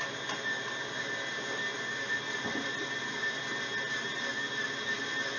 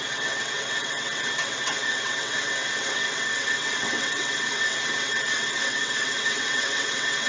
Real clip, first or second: first